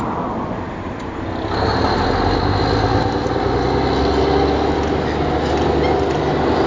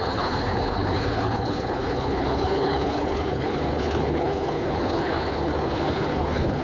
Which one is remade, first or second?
second